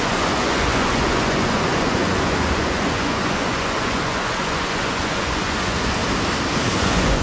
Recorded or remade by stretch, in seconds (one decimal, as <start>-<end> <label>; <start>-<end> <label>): 0.0-6.0 remade; 6.0-6.8 recorded; 6.8-7.2 remade